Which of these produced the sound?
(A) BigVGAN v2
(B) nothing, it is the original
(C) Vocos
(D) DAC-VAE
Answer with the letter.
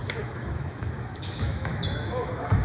D